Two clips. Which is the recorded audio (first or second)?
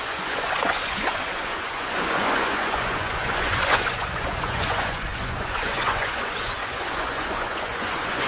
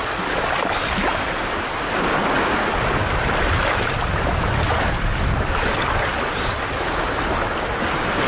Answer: second